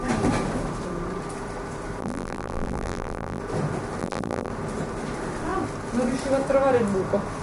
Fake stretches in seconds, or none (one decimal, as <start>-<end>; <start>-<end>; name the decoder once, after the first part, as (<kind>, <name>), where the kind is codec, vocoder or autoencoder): 2.0-3.4 (vocoder, BigVGAN v2); 4.0-4.5